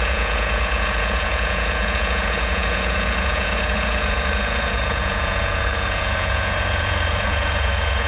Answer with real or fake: fake